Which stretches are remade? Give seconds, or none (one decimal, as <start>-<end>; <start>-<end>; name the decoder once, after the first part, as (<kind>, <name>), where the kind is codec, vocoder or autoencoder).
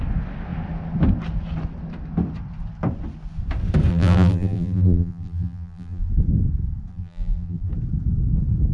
3.9-6.1 (vocoder, BigVGAN v2); 6.9-7.7